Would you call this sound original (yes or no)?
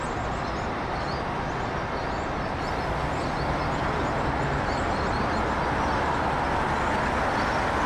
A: yes